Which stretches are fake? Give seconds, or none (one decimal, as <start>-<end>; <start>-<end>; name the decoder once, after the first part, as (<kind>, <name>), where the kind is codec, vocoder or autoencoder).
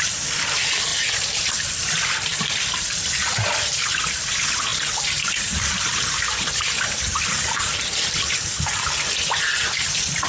0.0-0.9 (vocoder, BigVGAN v2); 1.7-4.7; 5.4-5.9; 7.6-10.3